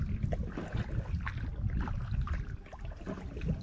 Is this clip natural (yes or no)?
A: yes